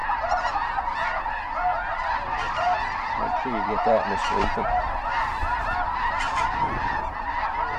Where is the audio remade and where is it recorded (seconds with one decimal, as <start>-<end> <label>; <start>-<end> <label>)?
0.0-1.9 recorded; 1.9-6.6 remade; 6.6-7.8 recorded